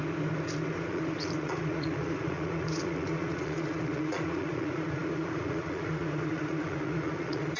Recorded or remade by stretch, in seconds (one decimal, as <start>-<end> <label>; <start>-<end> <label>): 0.0-0.7 recorded; 0.7-7.6 remade